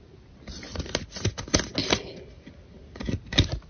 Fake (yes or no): no